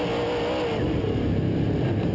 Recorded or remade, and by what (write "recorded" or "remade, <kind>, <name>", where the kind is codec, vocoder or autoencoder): recorded